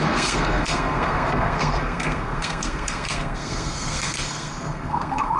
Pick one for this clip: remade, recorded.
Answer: remade